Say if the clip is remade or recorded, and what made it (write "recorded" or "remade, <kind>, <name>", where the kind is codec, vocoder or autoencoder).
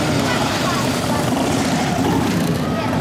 recorded